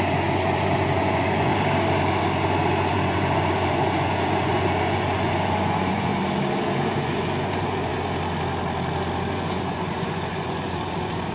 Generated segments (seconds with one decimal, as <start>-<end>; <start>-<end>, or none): 0.0-1.5; 2.9-6.1; 6.9-7.9; 9.3-11.3